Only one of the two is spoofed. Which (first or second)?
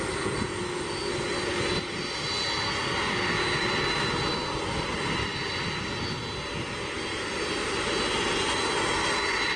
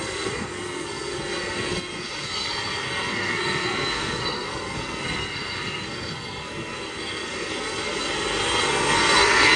second